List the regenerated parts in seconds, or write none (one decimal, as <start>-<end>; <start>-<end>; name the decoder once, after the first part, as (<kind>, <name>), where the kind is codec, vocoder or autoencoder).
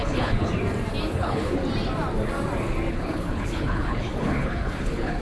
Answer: 0.0-0.5 (codec, HILCodec); 1.1-1.6; 2.9-5.2